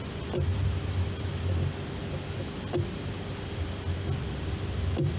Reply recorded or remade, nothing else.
recorded